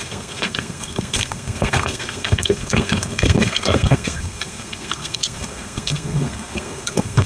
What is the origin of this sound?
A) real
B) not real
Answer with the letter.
B